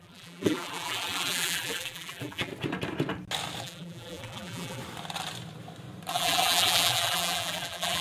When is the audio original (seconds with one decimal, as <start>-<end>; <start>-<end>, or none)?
2.5-3.6; 4.8-6.1